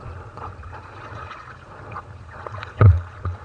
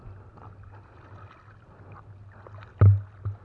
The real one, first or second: second